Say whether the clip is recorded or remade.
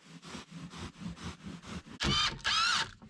recorded